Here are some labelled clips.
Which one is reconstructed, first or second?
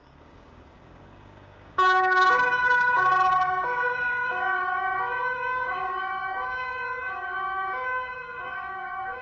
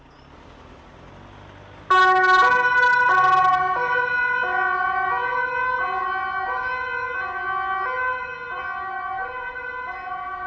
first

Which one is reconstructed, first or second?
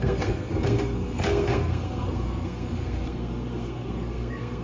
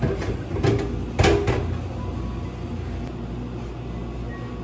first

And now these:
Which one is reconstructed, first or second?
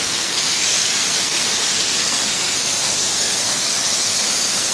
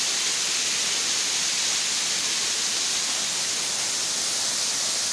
first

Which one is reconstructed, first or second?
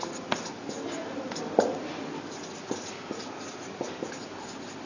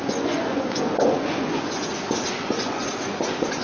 second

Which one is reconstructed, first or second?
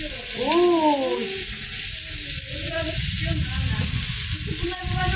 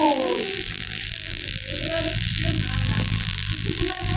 second